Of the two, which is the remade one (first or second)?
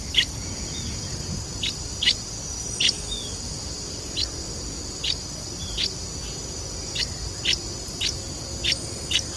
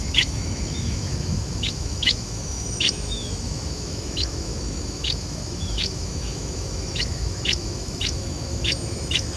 second